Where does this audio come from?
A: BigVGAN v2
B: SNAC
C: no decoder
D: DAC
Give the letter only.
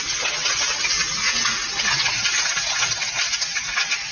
C